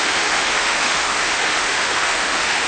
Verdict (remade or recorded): remade